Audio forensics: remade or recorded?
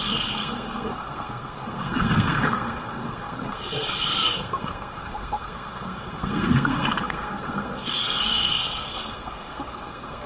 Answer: remade